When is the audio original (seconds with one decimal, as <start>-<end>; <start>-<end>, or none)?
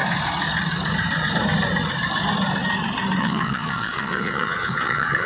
0.0-3.2